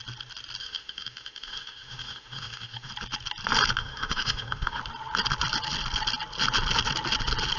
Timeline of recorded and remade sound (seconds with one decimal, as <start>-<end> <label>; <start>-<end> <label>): 0.0-0.6 recorded; 0.6-2.9 remade; 2.9-3.8 recorded; 3.8-4.8 remade; 4.8-7.6 recorded